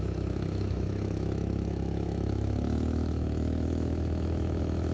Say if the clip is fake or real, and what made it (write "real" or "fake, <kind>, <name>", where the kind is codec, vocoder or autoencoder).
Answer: fake, autoencoder, DAC-VAE